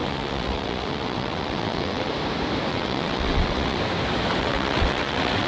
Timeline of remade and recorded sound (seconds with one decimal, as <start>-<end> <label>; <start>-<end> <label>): 0.0-2.1 remade; 2.1-2.7 recorded; 2.7-3.8 remade; 3.8-4.4 recorded; 4.4-5.5 remade